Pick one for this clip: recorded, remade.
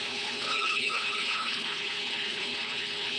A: remade